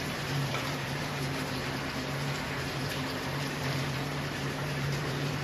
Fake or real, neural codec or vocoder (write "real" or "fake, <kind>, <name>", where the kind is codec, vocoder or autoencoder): fake, vocoder, BigVGAN v2